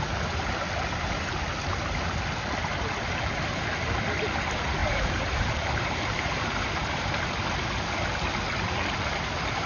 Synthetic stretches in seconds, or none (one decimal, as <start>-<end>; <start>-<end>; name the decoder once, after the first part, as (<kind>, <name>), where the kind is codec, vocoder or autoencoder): 2.7-3.7 (vocoder, BigVGAN v2); 4.8-7.2